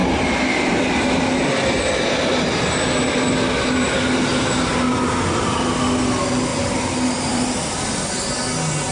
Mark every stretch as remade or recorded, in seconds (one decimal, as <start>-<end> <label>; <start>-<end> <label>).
0.0-6.5 recorded; 6.5-8.1 remade; 8.1-8.9 recorded